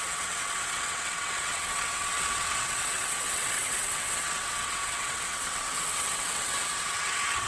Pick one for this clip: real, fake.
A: fake